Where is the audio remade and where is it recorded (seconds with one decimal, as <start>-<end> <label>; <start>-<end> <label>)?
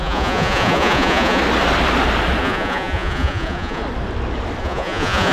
0.0-1.4 remade; 1.4-2.4 recorded; 2.4-3.8 remade; 3.8-4.6 recorded; 4.6-5.3 remade